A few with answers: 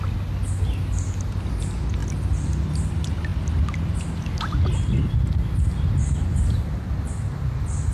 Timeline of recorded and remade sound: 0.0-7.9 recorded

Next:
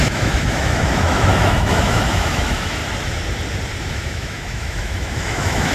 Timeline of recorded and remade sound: 0.0-2.8 remade; 2.8-3.8 recorded; 3.8-5.7 remade

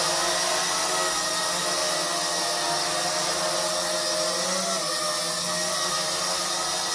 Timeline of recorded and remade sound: 0.0-6.9 recorded

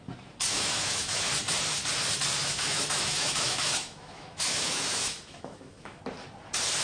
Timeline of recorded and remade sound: 0.0-0.5 recorded; 0.5-1.3 remade; 1.3-2.4 recorded; 2.4-6.0 remade; 6.0-6.8 recorded

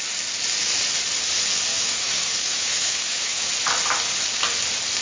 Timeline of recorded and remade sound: 0.0-1.7 recorded; 1.7-3.5 remade; 3.5-5.0 recorded

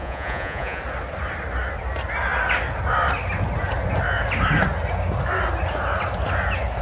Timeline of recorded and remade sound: 0.0-0.8 remade; 0.8-6.8 recorded